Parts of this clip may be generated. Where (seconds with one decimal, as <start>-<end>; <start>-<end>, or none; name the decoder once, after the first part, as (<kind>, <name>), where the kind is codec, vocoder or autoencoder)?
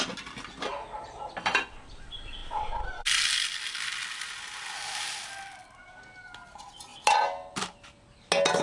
none